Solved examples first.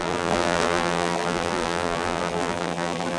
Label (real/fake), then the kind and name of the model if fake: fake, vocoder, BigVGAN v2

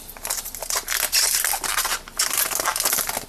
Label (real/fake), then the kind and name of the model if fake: real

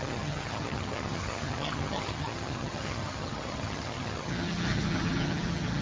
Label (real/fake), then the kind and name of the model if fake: fake, vocoder, HiFi-GAN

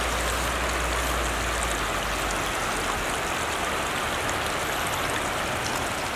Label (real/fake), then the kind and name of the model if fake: real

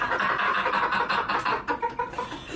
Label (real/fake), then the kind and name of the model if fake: real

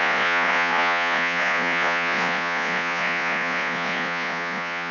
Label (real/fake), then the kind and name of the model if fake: fake, vocoder, Vocos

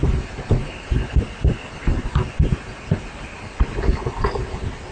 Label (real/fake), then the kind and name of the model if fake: real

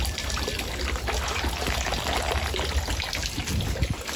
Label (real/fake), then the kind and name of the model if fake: real